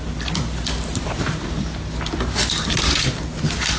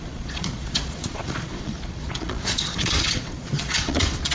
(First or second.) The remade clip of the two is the second